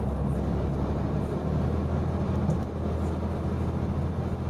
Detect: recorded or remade recorded